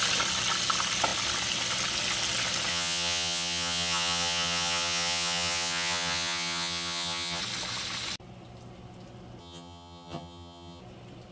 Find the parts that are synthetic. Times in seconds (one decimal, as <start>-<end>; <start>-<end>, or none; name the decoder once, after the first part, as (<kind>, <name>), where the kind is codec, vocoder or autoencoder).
2.7-7.4 (vocoder, HiFi-GAN); 9.4-10.8